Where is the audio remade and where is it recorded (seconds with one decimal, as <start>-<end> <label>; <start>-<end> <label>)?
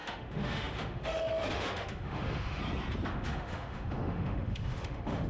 0.0-2.6 remade; 2.6-3.1 recorded; 3.1-5.3 remade